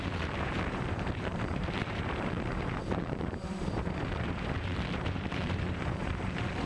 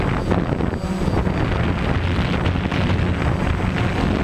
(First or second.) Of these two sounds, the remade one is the first